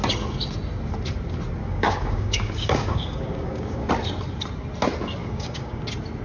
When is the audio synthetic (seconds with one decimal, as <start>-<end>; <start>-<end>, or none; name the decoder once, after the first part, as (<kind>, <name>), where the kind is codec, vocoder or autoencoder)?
1.6-3.9 (codec, DAC); 5.2-5.8